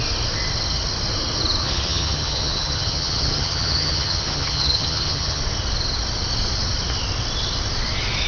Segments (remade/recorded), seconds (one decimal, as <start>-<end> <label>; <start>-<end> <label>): 0.0-1.6 recorded; 1.6-5.4 remade; 5.4-8.3 recorded